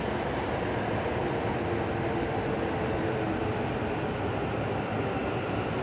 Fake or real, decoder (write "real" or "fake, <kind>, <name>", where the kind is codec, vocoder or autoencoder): real